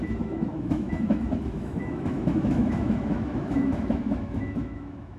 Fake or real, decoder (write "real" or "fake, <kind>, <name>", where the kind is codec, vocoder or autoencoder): fake, autoencoder, DAC-VAE